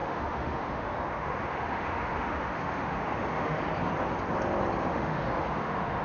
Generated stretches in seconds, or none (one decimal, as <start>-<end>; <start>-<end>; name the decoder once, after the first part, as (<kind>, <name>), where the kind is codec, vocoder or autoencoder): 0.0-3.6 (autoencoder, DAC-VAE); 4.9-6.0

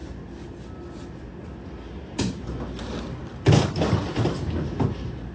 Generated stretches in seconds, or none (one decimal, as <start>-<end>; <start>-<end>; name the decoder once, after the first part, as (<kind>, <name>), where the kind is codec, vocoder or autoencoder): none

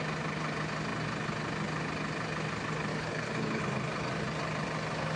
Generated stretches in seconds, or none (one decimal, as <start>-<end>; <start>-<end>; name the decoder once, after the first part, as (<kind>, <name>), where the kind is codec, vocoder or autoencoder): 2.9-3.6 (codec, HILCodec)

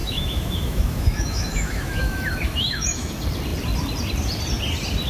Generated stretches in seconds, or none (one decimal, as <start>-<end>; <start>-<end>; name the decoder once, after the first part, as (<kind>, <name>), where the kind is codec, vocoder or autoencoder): 0.0-3.1 (autoencoder, DAC-VAE)

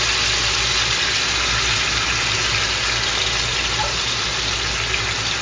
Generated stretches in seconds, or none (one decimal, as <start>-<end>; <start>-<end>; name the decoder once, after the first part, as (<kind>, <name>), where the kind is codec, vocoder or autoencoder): 3.5-4.2 (vocoder, BigVGAN v2)

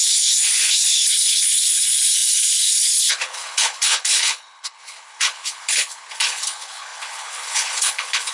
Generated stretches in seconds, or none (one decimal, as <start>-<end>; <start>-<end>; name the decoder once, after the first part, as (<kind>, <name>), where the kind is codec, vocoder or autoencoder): 0.0-8.3 (codec, HILCodec)

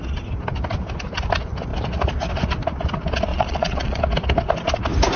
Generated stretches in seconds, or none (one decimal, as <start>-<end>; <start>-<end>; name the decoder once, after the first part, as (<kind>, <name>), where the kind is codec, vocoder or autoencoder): 3.3-4.0 (vocoder, Vocos)

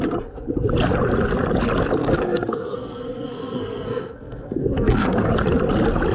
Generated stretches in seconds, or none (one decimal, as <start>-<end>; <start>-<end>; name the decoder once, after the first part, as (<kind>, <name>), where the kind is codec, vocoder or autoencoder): 2.0-5.3 (codec, SNAC)